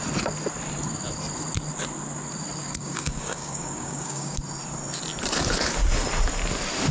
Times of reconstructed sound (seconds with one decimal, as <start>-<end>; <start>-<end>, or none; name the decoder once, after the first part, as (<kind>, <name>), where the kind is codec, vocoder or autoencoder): 2.6-4.4 (codec, DAC)